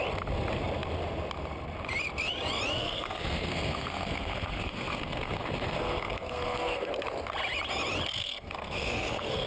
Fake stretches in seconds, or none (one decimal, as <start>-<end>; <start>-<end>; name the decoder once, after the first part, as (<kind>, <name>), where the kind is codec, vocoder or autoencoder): 2.8-6.9 (codec, SNAC); 8.2-9.5